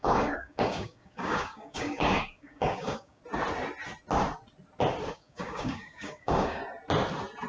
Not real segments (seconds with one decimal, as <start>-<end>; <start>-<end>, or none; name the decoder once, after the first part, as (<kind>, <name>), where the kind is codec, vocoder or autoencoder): 0.0-3.2 (codec, DAC); 5.1-6.6